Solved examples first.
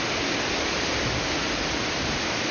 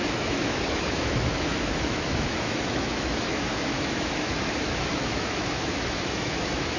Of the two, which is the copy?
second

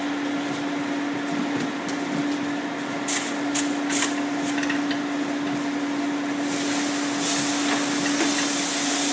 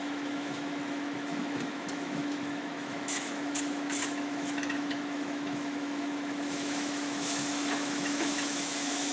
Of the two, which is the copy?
second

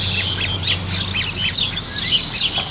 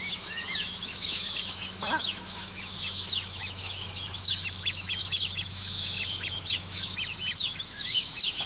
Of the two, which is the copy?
second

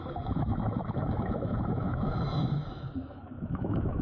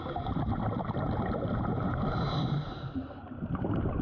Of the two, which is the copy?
first